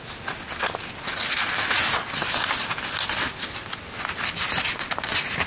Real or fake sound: real